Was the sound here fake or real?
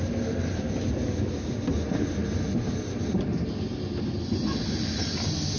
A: real